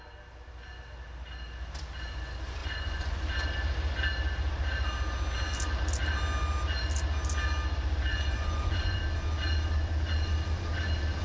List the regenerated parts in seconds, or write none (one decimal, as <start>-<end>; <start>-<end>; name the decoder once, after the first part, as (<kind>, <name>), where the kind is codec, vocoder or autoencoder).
2.6-3.2 (vocoder, Vocos); 8.1-9.0